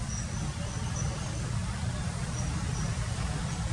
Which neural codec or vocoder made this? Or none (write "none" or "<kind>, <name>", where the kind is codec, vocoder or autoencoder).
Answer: none